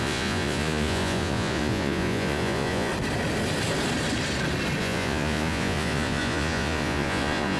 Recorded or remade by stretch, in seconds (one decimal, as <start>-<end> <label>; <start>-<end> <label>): 0.0-2.9 remade; 2.9-4.8 recorded; 4.8-7.6 remade